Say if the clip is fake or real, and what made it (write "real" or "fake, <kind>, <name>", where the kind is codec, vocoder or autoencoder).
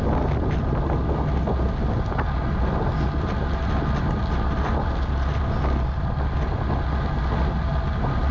real